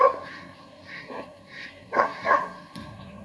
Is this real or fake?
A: fake